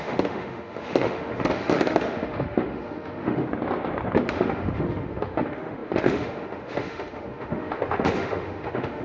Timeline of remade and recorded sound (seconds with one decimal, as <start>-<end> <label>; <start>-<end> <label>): 0.0-3.4 remade; 3.4-4.3 recorded; 4.3-9.0 remade